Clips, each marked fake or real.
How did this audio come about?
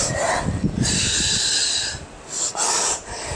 real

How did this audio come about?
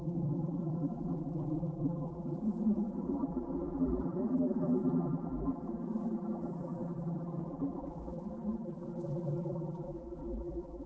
fake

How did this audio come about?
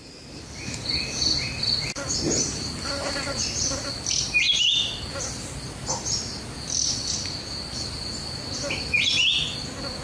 real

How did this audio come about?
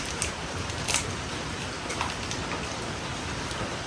real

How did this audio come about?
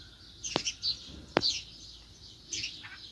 real